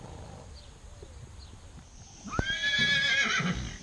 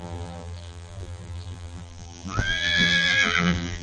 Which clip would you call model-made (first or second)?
second